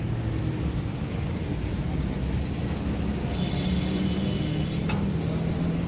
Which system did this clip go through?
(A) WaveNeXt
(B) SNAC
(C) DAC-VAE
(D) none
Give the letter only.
D